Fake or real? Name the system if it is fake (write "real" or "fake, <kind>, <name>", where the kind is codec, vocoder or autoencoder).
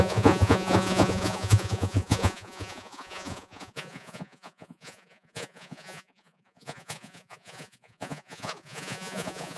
fake, vocoder, Vocos